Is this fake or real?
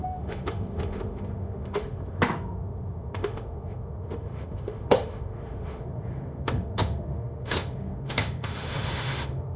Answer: fake